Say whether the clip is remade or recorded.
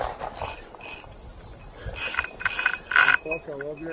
recorded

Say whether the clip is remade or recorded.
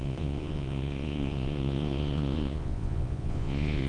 remade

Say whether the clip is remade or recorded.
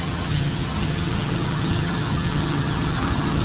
remade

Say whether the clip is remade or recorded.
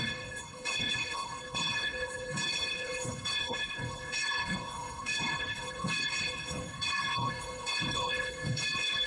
remade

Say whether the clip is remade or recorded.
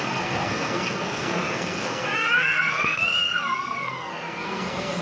remade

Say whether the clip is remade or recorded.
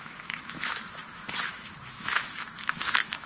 remade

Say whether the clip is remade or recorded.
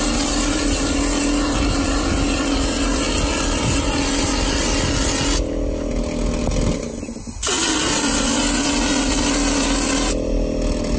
recorded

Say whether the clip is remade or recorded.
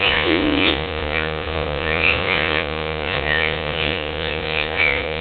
remade